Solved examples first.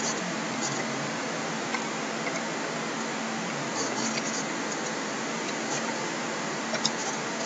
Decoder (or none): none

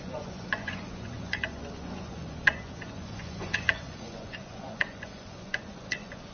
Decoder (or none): vocoder, Vocos